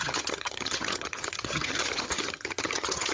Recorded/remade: remade